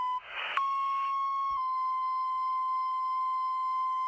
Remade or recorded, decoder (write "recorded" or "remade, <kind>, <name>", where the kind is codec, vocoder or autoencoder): remade, codec, DAC